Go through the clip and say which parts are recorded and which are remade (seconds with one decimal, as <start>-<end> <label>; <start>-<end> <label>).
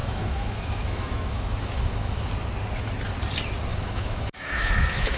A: 0.0-2.3 remade; 2.3-3.7 recorded; 3.7-5.2 remade